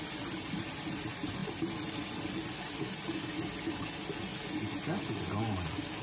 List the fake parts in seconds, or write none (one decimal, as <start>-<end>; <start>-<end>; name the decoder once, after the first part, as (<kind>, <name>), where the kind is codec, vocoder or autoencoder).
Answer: none